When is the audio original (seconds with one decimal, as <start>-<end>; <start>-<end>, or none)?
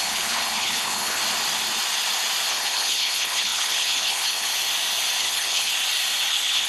1.2-2.5; 4.5-5.2; 5.7-6.3